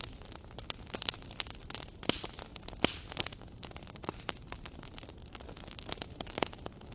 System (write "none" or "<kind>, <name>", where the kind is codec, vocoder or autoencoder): none